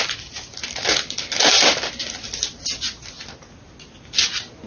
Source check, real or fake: real